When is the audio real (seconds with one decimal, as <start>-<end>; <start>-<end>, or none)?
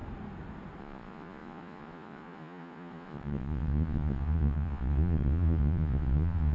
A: 0.0-0.8